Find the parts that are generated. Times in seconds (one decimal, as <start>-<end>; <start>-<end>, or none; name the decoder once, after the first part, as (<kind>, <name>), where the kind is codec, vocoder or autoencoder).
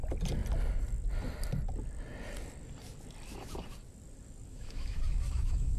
4.5-5.8 (autoencoder, DAC-VAE)